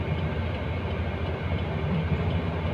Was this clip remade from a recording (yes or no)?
no